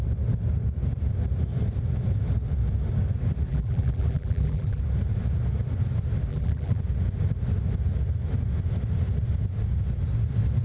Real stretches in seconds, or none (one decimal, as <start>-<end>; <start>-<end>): 0.0-3.5; 4.8-6.3; 6.8-10.6